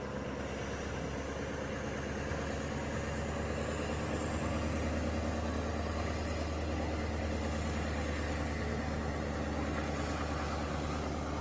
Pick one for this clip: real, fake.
real